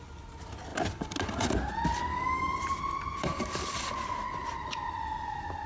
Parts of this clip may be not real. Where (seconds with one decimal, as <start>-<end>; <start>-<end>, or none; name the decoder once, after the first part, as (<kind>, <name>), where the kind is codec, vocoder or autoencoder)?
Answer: 2.1-2.6 (codec, DAC); 3.2-3.9